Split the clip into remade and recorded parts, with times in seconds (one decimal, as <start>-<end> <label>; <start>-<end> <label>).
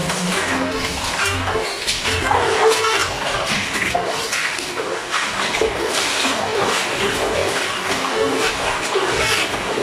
0.0-9.8 remade